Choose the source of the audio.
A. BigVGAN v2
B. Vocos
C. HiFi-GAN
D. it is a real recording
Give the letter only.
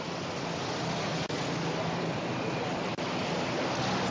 D